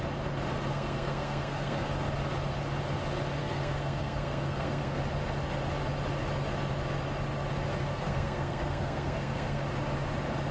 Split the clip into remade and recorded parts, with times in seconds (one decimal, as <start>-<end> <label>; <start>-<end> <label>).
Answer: 0.0-0.7 recorded; 0.7-1.9 remade; 1.9-3.4 recorded; 3.4-5.0 remade; 5.0-7.9 recorded; 7.9-9.6 remade; 9.6-10.5 recorded